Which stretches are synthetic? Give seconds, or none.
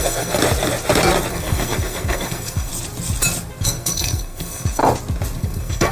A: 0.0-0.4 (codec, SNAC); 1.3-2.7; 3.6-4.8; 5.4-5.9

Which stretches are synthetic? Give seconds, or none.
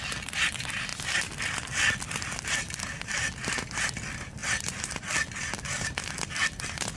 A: none